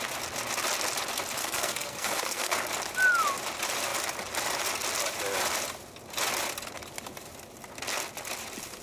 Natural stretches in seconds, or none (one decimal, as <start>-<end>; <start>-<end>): 0.0-1.4; 2.7-8.8